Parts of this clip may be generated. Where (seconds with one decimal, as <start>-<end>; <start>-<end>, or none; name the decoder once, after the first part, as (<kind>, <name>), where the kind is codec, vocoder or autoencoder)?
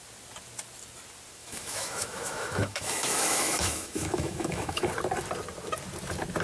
1.4-4.9 (autoencoder, DAC-VAE)